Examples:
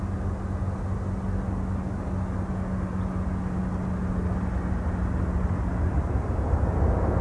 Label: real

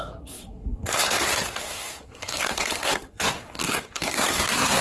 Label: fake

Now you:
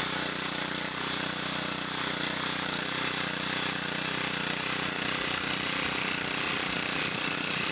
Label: real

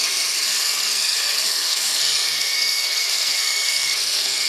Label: fake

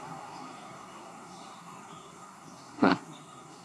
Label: fake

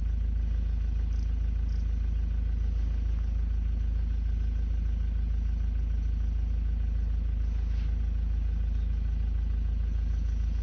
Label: real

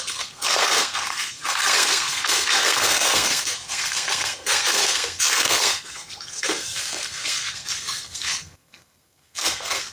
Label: fake